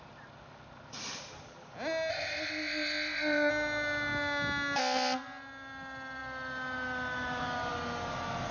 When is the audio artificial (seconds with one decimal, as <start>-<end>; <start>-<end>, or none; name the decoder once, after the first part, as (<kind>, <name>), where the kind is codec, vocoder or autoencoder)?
2.1-3.5 (codec, ZipCodec)